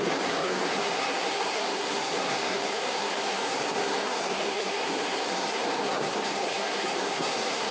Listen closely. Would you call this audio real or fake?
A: fake